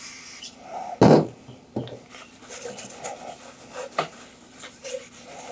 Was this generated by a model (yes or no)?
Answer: no